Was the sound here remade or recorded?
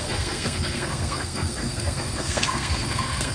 remade